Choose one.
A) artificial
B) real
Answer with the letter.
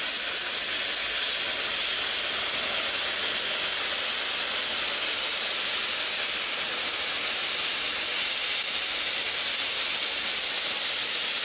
B